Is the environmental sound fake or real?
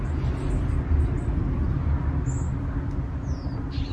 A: real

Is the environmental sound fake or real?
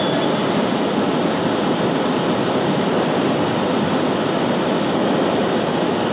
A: fake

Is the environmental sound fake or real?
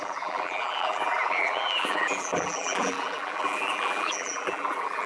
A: fake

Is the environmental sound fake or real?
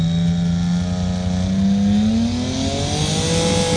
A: real